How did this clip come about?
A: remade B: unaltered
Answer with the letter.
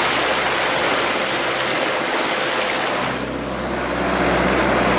B